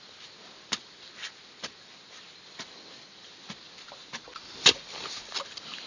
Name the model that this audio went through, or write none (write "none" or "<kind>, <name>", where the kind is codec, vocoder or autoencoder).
none